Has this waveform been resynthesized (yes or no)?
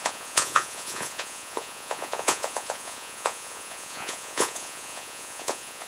yes